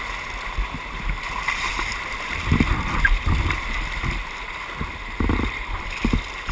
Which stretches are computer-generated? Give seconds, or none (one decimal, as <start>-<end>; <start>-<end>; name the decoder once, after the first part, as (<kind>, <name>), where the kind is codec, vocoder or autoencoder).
none